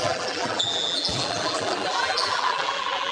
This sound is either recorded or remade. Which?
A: remade